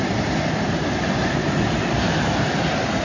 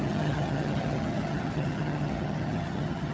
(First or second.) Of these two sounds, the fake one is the second